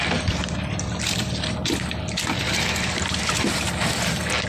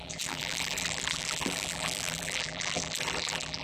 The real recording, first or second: first